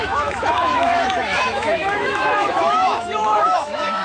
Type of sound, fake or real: fake